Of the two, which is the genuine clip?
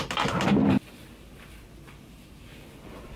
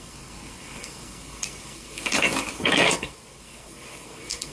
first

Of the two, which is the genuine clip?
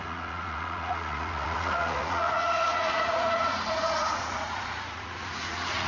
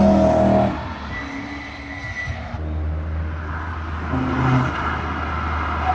second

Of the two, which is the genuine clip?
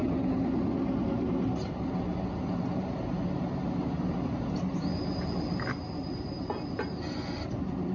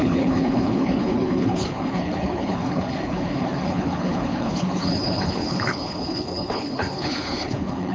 first